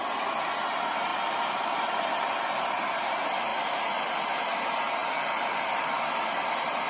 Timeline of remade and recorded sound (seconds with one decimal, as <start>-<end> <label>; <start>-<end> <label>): 0.0-1.1 recorded; 1.1-2.4 remade; 2.4-3.5 recorded; 3.5-4.0 remade; 4.0-5.0 recorded; 5.0-6.1 remade; 6.1-6.9 recorded